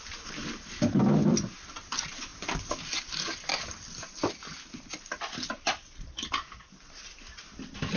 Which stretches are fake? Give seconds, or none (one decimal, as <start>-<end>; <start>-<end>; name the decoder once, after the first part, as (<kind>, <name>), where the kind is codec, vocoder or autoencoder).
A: none